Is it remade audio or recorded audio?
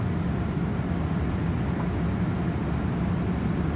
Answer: recorded